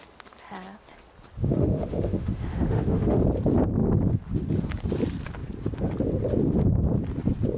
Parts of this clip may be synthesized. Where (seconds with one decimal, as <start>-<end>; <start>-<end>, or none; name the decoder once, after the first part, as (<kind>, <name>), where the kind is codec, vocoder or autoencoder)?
1.4-3.2 (autoencoder, DAC-VAE)